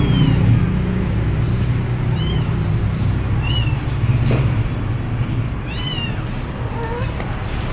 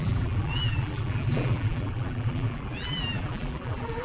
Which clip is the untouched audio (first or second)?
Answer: first